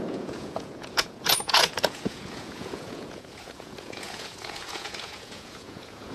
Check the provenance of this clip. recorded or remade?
remade